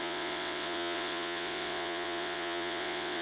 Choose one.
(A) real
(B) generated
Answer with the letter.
B